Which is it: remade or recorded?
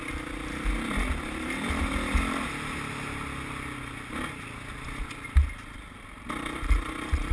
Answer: recorded